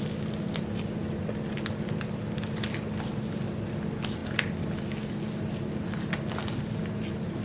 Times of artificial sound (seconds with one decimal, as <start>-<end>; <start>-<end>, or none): none